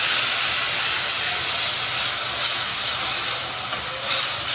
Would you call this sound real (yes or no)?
yes